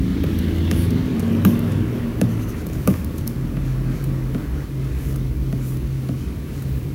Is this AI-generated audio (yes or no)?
yes